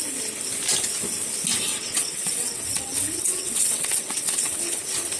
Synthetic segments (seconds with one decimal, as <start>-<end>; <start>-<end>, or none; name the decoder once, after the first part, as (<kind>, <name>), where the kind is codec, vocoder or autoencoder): 1.7-4.8 (vocoder, WaveNeXt)

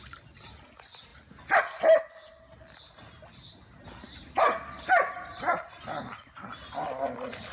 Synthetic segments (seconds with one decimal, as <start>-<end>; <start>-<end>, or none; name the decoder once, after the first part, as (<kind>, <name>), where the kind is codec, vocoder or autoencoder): none